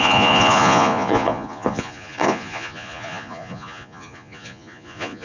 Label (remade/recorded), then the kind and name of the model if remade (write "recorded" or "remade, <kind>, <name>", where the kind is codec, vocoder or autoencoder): remade, vocoder, Vocos